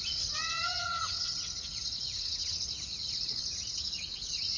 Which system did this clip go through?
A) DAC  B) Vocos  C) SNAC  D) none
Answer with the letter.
B